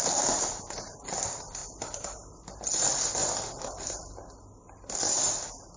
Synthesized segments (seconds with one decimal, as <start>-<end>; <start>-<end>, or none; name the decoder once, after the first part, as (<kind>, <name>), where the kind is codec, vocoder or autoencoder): none